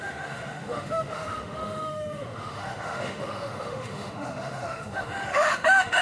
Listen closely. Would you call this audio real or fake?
fake